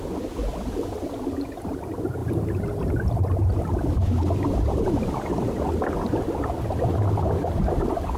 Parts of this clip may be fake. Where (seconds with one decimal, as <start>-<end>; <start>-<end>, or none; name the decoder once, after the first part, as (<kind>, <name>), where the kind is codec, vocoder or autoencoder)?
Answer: none